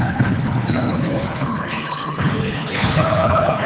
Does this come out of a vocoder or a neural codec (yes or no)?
yes